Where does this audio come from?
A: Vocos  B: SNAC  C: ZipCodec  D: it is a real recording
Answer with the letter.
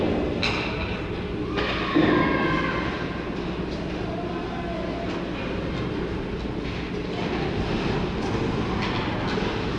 D